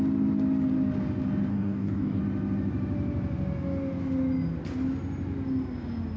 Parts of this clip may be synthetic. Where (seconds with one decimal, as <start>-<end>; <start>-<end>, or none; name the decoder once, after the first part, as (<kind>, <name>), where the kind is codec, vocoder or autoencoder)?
1.5-2.2 (codec, DAC)